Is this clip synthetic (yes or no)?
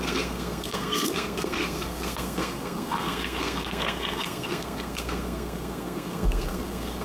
yes